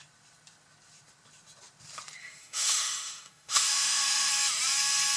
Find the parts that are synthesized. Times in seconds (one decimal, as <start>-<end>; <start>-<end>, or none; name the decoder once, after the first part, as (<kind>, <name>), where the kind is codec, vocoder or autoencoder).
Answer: 2.2-4.3 (autoencoder, DAC-VAE)